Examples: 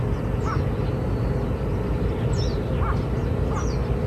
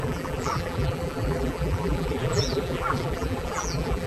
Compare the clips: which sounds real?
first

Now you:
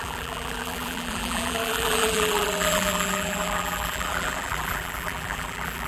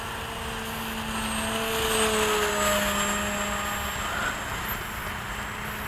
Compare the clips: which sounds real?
second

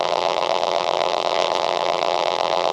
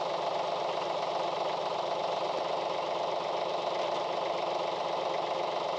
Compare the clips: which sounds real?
second